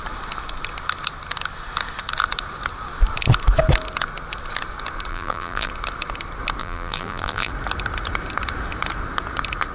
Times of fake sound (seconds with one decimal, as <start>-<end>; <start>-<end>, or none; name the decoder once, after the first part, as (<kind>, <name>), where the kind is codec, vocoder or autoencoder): 5.1-5.7 (vocoder, BigVGAN v2); 6.6-7.5